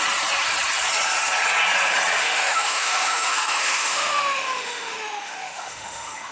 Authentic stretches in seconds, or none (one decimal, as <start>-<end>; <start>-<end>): 0.0-2.2